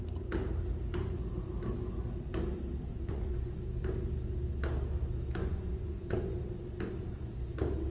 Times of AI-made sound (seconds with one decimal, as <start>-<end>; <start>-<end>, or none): 2.9-3.6; 5.4-6.2